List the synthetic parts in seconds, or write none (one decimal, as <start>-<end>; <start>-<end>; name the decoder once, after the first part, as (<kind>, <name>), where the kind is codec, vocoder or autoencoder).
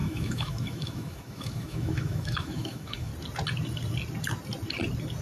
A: 0.0-3.1 (autoencoder, DAC-VAE)